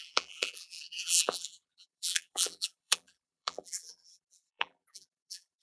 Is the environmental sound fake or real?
fake